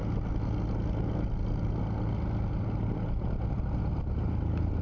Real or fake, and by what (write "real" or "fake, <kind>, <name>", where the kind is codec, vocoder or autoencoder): real